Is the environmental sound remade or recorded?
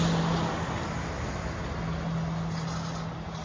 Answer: recorded